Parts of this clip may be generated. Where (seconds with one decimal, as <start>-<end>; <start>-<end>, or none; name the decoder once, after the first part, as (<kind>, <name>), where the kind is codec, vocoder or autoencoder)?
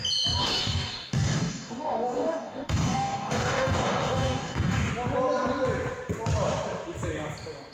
0.4-4.9 (codec, DAC)